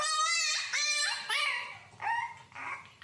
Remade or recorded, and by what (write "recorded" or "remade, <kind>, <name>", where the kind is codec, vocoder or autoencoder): recorded